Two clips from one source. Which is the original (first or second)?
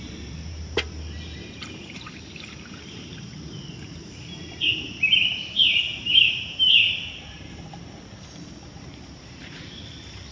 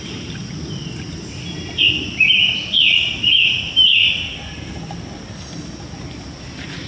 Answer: second